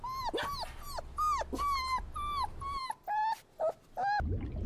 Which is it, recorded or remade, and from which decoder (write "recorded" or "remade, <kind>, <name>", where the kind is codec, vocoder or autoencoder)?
recorded